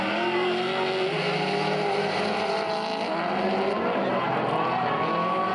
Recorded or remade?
recorded